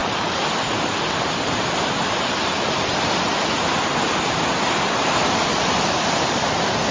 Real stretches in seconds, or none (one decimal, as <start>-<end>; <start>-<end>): 0.0-6.9